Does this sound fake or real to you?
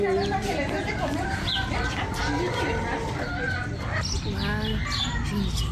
real